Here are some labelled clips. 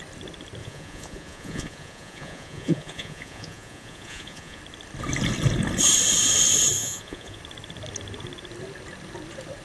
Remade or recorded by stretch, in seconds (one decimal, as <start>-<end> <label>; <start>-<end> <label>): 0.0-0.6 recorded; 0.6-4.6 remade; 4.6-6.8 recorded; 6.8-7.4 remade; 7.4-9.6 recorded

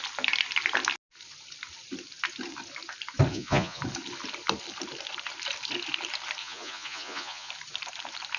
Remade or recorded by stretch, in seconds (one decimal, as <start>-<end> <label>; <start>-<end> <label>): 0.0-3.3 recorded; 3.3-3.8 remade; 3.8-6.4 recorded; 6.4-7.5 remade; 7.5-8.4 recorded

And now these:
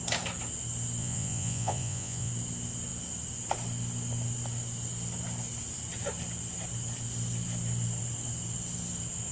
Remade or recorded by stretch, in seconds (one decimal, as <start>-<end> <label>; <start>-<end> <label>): 0.0-1.0 recorded; 1.0-2.3 remade; 2.3-9.3 recorded

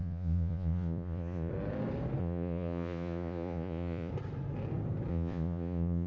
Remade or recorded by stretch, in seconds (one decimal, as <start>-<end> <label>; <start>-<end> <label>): 0.0-1.5 remade; 1.5-2.2 recorded; 2.2-4.1 remade; 4.1-5.1 recorded; 5.1-6.1 remade

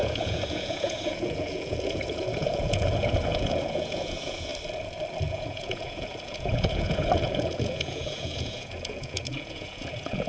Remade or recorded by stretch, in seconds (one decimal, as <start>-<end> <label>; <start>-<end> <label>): 0.0-4.5 remade; 4.5-5.3 recorded; 5.3-10.3 remade